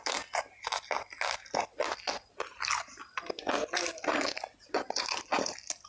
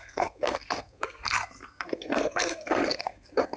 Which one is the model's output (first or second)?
second